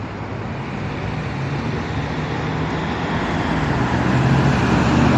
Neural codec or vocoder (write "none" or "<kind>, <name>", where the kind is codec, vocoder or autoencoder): none